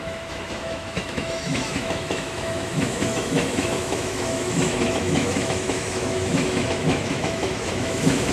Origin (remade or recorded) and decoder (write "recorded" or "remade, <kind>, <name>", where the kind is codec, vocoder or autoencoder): remade, autoencoder, DAC-VAE